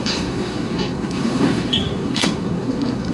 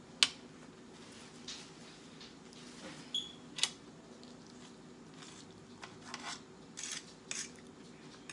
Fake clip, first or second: first